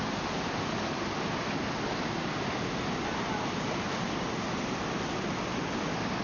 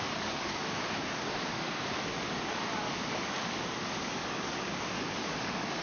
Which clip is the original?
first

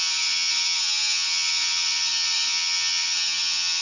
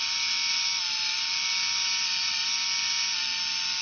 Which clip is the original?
second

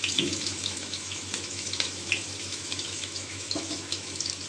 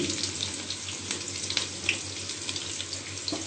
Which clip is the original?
second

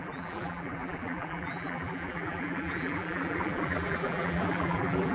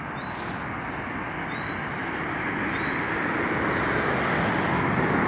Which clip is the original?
second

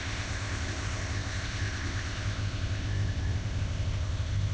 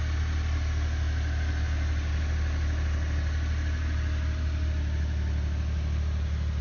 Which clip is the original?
second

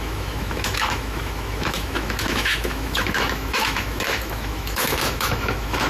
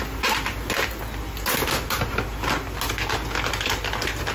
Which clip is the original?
second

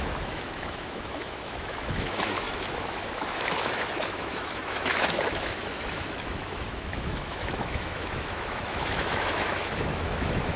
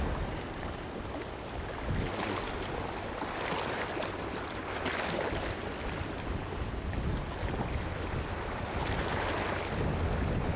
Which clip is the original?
second